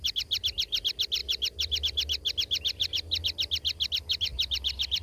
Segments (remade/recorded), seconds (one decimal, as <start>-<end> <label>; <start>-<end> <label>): 0.0-5.0 recorded